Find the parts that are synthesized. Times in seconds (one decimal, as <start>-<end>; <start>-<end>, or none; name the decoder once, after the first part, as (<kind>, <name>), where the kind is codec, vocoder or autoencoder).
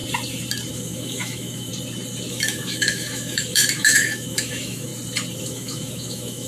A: 0.7-1.7 (autoencoder, DAC-VAE); 2.3-4.9; 5.4-6.5